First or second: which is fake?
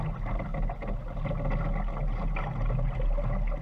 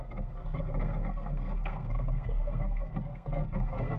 second